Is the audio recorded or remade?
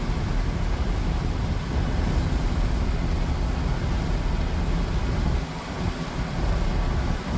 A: recorded